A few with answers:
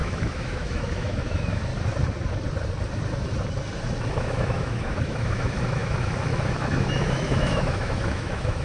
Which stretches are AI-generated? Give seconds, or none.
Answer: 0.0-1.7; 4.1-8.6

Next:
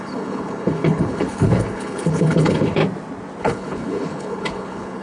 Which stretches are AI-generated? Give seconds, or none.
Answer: 0.0-2.8; 3.4-5.0

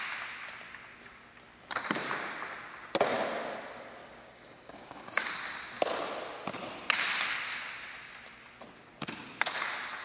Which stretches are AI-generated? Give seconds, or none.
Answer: 4.0-5.3

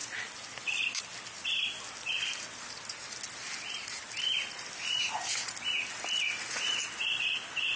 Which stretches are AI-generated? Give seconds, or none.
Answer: none